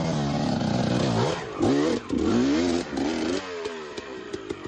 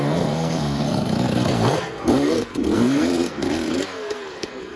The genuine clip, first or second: first